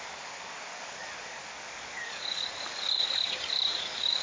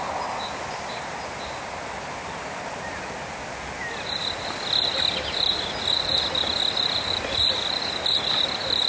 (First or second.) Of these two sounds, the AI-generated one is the first